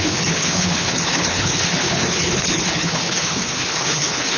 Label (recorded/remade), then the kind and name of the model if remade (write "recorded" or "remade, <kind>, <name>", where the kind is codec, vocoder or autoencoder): remade, codec, HILCodec